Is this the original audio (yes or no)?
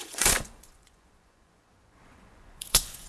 no